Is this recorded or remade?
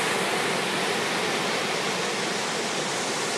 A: recorded